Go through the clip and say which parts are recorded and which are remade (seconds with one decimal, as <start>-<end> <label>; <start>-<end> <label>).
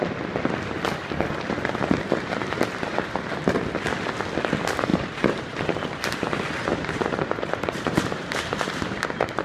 0.0-4.9 recorded; 4.9-5.8 remade; 5.8-6.7 recorded; 6.7-8.3 remade; 8.3-9.4 recorded